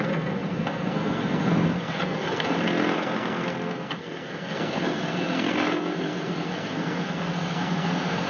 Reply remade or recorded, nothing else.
remade